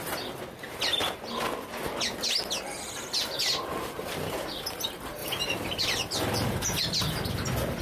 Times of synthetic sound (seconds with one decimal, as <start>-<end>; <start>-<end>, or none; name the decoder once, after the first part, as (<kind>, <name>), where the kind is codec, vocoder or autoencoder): 5.2-5.8 (vocoder, BigVGAN v2)

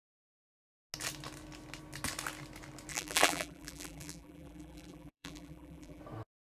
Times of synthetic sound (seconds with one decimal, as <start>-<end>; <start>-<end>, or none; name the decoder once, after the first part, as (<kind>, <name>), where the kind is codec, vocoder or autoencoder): 2.9-6.0 (vocoder, BigVGAN v2)

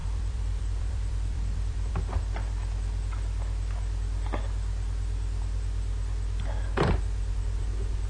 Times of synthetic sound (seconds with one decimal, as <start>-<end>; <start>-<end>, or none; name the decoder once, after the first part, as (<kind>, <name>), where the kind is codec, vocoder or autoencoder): 0.0-1.9 (vocoder, BigVGAN v2)

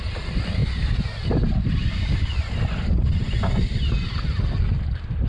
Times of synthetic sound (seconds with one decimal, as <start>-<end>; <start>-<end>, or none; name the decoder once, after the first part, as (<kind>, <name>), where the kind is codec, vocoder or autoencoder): 0.6-2.4 (vocoder, BigVGAN v2)

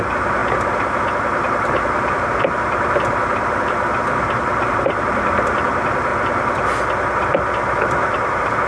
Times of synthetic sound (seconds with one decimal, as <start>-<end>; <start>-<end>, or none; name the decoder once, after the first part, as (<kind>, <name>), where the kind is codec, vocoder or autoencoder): 0.0-6.1 (vocoder, BigVGAN v2); 7.8-8.7

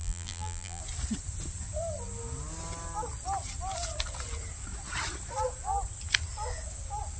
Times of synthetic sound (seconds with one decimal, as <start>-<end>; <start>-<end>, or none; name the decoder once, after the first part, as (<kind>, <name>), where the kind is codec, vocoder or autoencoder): 0.0-0.8 (vocoder, BigVGAN v2)

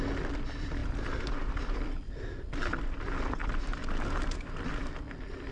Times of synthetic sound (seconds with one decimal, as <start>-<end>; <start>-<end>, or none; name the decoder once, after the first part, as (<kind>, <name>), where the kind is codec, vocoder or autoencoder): none

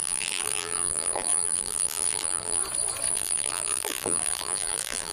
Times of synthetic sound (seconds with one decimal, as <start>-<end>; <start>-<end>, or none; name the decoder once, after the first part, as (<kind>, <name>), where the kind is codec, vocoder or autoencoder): 0.0-2.6 (vocoder, BigVGAN v2); 3.1-5.1